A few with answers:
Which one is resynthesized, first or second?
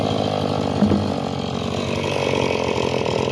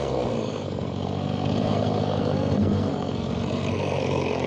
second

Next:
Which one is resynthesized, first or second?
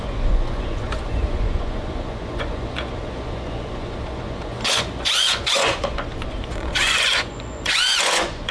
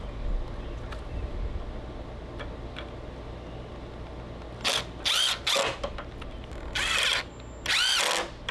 first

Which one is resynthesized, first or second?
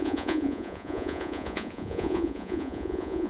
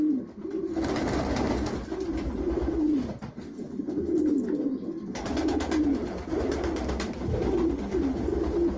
first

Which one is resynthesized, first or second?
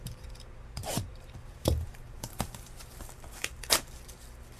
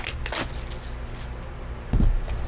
first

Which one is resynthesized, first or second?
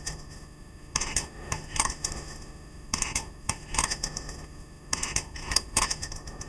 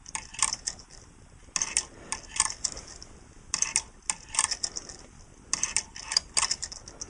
first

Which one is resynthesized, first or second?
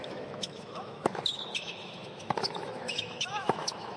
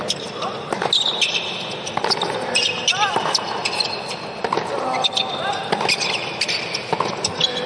first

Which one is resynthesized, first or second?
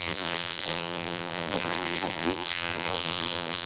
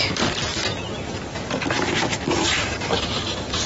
first